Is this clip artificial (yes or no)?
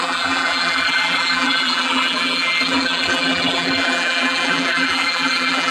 yes